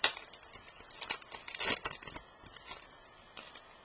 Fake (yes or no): no